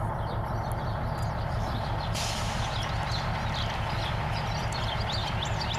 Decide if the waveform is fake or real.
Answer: real